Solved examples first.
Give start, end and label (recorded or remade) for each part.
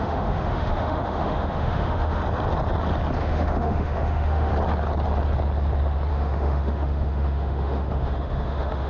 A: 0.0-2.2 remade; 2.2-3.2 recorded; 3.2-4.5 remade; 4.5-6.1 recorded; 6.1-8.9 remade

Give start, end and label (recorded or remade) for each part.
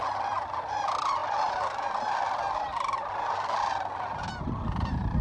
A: 0.0-5.2 remade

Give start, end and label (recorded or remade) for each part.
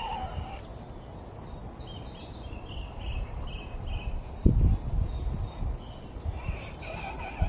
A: 0.0-7.5 recorded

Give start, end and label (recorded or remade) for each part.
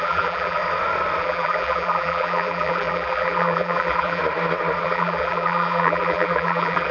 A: 0.0-0.6 remade; 0.6-1.2 recorded; 1.2-4.2 remade; 4.2-4.8 recorded; 4.8-6.9 remade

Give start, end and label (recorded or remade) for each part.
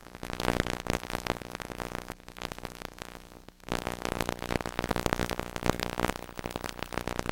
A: 0.0-4.2 remade; 4.2-4.9 recorded; 4.9-6.1 remade; 6.1-7.3 recorded